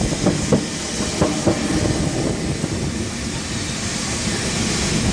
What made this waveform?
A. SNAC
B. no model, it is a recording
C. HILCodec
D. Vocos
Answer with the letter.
B